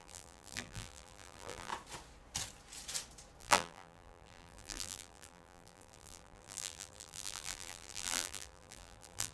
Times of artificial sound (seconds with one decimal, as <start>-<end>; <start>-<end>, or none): 0.0-1.7; 3.4-9.3